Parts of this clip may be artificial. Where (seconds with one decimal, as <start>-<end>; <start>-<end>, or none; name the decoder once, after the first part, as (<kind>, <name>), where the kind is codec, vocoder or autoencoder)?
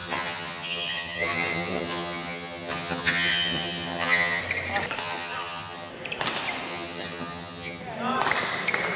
0.0-4.4 (vocoder, HiFi-GAN); 5.0-5.9; 6.7-7.8